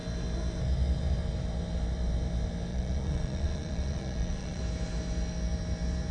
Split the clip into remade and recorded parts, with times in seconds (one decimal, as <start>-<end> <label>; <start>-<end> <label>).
0.0-2.7 recorded; 2.7-4.6 remade; 4.6-6.1 recorded